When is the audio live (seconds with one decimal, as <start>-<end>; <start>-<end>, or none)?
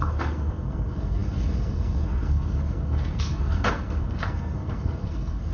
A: none